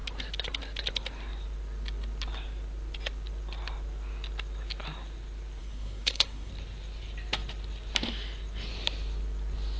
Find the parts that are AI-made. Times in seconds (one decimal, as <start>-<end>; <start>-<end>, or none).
5.6-6.5